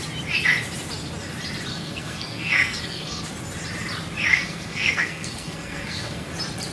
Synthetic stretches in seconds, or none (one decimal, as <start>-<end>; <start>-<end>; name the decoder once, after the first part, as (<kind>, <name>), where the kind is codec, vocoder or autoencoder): 1.7-3.2 (codec, SNAC); 4.3-6.3